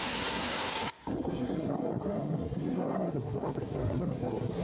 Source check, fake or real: fake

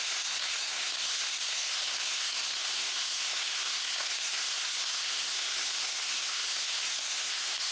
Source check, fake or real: fake